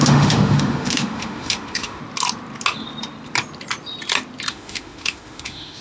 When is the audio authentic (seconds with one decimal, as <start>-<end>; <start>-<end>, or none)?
2.0-4.5